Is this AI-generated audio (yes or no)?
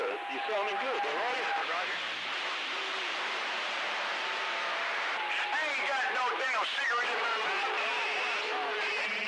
yes